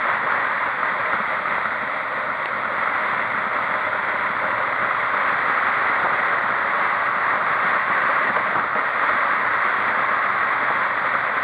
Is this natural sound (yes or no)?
yes